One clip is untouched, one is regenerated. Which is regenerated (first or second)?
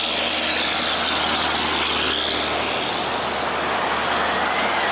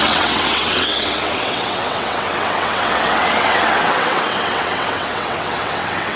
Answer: second